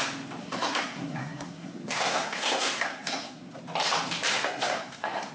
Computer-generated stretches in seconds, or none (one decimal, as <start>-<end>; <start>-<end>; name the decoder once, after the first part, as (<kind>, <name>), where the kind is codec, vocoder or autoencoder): 0.4-3.6 (codec, SNAC); 4.3-5.3